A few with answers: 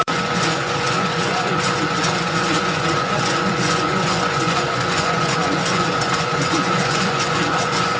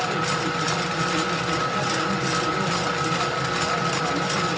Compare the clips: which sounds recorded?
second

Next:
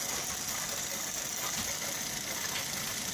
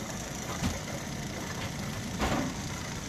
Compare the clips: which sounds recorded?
first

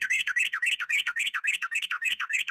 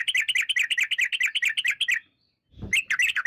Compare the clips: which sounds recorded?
second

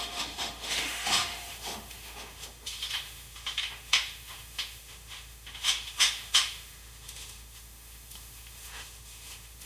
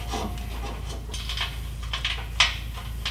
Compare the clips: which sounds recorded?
second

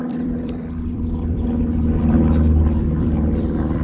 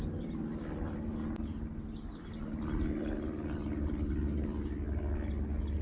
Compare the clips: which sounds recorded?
second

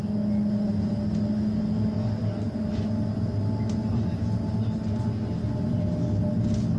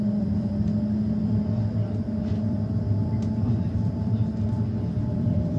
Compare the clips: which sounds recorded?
first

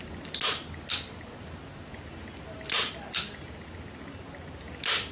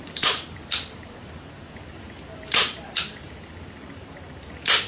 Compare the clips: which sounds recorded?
first